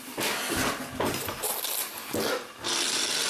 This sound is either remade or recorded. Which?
recorded